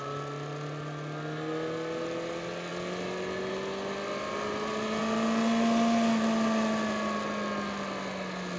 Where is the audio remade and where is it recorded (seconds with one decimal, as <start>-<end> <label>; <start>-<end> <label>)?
0.0-8.6 recorded